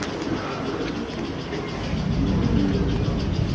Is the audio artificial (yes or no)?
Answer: no